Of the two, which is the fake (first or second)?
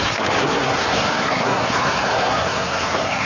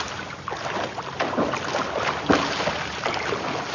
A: first